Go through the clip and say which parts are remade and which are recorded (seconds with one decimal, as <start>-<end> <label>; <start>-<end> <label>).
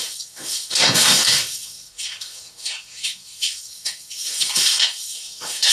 0.0-5.7 remade